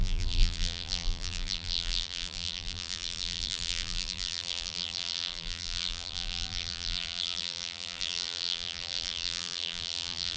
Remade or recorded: remade